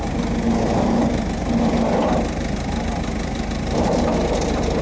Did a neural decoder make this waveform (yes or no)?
no